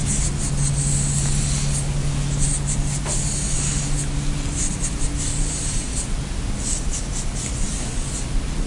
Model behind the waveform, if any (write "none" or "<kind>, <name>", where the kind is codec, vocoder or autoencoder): none